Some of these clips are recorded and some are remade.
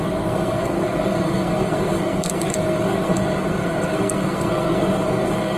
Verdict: remade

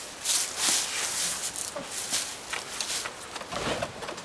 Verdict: recorded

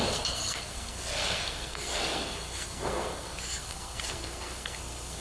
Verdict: remade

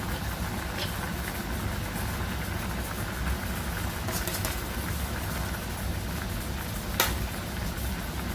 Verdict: recorded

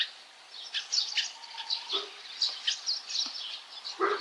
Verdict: recorded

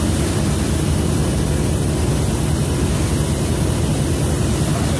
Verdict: recorded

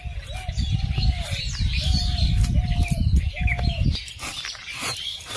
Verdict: recorded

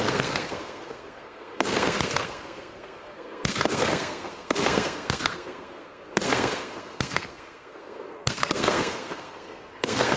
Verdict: remade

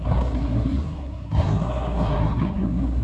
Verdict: remade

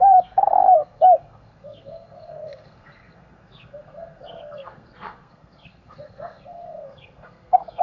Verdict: remade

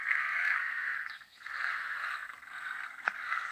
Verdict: remade